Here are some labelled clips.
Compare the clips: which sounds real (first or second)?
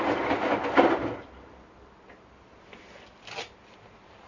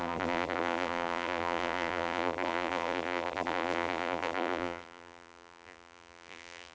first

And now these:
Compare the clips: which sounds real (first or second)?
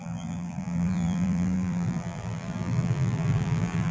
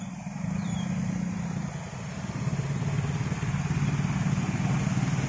second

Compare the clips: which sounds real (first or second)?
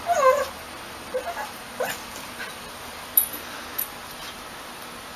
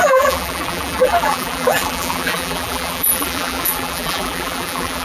first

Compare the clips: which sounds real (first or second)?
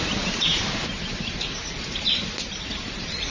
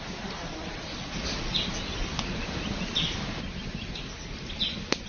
second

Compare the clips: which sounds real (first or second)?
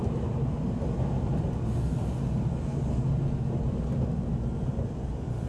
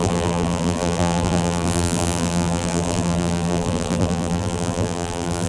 first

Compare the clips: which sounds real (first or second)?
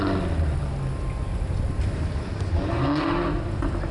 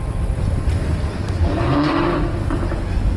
first